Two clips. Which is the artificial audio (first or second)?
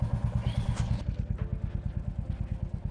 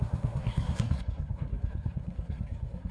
second